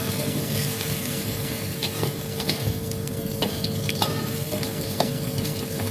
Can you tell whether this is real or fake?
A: fake